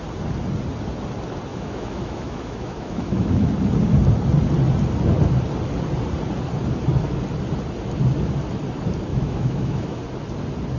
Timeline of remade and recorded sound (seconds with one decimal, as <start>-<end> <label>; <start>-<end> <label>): 0.0-1.5 recorded; 1.5-3.5 remade; 3.5-9.1 recorded; 9.1-10.0 remade; 10.0-10.8 recorded